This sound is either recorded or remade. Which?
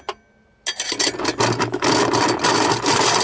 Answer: recorded